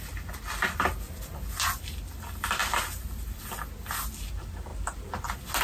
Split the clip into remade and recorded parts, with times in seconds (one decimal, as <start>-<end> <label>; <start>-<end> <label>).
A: 0.0-2.6 recorded; 2.6-3.4 remade; 3.4-5.6 recorded